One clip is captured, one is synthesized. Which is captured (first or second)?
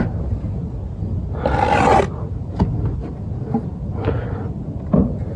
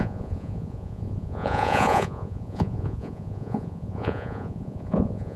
first